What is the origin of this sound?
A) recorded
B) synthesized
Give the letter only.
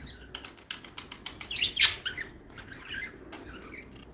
A